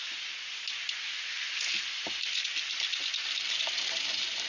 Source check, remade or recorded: recorded